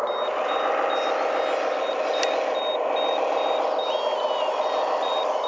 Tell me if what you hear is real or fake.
real